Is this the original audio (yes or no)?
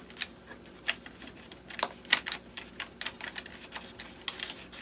yes